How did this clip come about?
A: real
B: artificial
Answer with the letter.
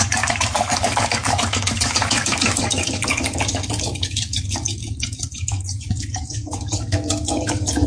B